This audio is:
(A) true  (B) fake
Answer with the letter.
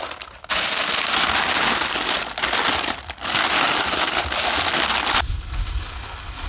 A